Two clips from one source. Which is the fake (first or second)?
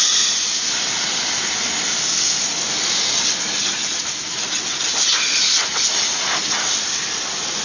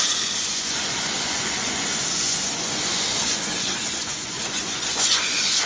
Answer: second